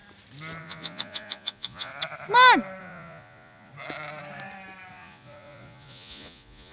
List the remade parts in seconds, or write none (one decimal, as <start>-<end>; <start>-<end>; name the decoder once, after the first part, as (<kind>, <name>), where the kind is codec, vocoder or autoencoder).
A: 0.6-1.9 (vocoder, Vocos); 2.8-3.7; 4.9-6.7